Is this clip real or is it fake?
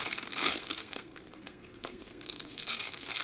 fake